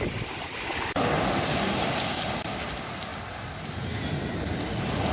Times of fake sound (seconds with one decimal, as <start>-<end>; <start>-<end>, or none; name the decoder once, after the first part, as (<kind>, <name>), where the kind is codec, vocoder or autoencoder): none